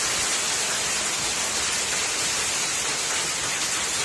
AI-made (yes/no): no